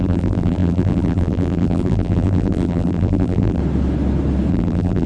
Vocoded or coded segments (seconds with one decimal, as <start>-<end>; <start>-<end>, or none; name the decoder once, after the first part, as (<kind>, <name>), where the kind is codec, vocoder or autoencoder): 0.0-3.6 (vocoder, BigVGAN v2); 4.5-5.1